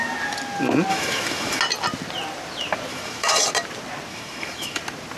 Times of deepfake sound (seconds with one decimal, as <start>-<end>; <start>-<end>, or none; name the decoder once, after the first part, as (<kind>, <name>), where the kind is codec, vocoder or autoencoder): 0.9-1.6 (autoencoder, DAC-VAE); 2.9-3.5; 4.1-4.8